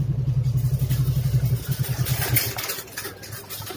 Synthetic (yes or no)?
no